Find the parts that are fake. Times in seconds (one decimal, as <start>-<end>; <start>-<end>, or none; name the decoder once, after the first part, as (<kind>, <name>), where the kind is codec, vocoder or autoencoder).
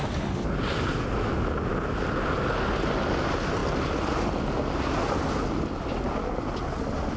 none